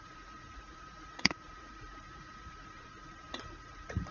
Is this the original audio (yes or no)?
no